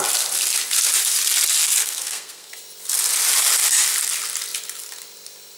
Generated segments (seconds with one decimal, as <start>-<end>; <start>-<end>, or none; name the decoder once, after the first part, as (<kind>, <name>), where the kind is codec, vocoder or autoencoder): 1.8-2.5 (codec, SNAC)